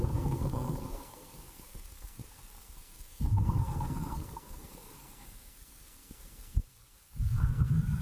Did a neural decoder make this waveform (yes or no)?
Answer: yes